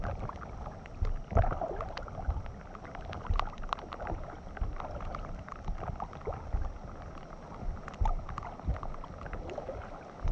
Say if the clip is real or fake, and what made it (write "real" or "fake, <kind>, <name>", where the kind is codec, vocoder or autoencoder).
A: real